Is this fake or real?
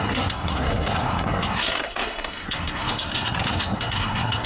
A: fake